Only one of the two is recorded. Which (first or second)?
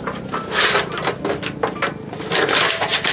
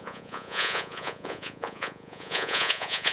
first